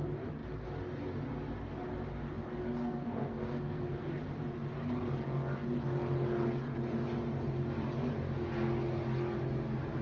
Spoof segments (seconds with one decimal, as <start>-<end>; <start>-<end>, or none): 2.8-4.1